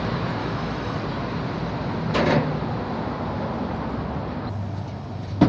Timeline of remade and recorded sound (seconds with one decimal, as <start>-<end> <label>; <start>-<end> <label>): 0.0-0.4 recorded; 0.4-1.0 remade; 1.0-5.5 recorded